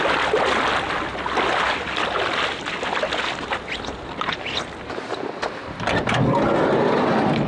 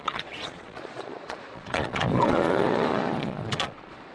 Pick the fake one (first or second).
second